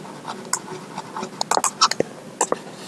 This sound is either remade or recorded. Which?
recorded